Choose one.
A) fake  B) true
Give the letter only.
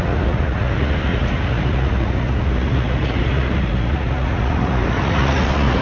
A